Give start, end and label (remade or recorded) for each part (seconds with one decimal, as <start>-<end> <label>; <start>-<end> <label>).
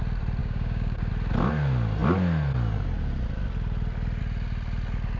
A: 0.0-0.4 recorded; 0.4-1.1 remade; 1.1-5.2 recorded